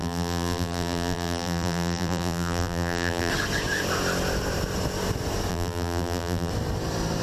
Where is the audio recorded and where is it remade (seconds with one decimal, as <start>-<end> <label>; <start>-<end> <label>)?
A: 0.0-3.3 remade; 3.3-5.5 recorded; 5.5-6.5 remade; 6.5-7.2 recorded